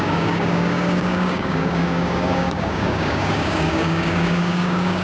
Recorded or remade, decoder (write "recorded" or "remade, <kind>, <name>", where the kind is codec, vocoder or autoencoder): remade, codec, DAC